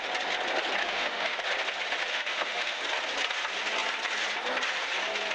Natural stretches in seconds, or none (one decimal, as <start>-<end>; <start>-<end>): 0.0-0.8; 1.4-2.1; 2.8-5.3